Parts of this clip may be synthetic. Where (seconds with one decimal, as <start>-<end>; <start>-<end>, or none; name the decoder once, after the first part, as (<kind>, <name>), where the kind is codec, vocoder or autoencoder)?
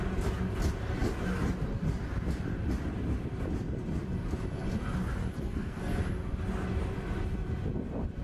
5.3-6.0 (codec, SNAC)